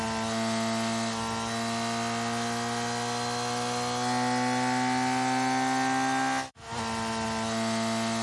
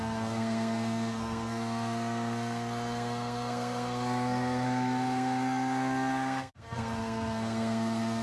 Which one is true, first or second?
first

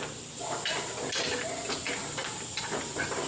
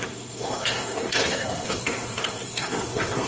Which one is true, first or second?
first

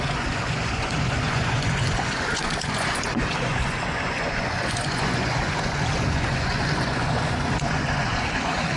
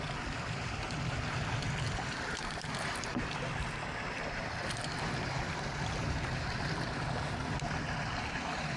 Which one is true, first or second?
second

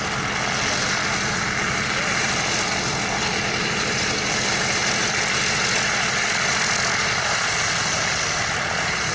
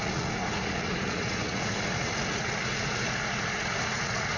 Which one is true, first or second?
first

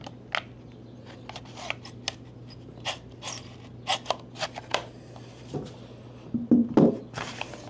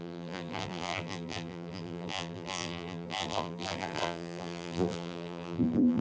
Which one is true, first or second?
first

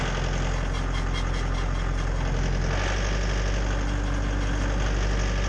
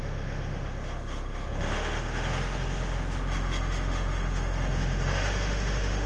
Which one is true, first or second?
first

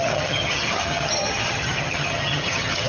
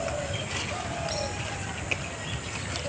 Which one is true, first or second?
second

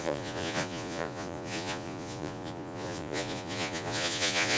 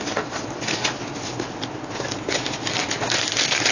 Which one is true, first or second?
second